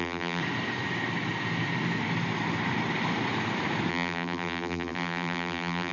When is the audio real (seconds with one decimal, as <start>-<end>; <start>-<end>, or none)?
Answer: 0.4-3.9